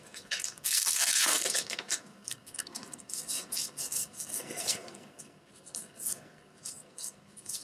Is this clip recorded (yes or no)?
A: no